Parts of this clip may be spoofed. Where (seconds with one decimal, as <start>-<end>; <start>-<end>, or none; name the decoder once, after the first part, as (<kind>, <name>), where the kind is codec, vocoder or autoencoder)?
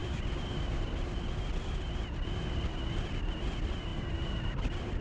none